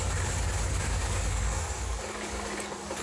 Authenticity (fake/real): fake